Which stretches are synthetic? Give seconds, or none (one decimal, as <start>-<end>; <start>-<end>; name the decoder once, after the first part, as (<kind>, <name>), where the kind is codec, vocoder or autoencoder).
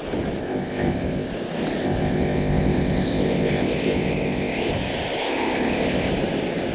0.4-1.3 (codec, ZipCodec); 1.8-4.7; 5.2-6.1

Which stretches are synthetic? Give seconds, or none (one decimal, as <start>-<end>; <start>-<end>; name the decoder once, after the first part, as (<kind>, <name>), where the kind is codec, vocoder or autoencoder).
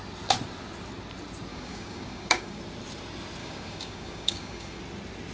1.5-2.6 (codec, DAC); 3.4-4.8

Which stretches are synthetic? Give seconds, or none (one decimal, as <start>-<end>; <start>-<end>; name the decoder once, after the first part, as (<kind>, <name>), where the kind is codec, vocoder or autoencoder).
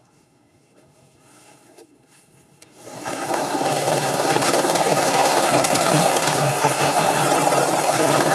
0.0-7.2 (codec, SNAC); 7.8-8.3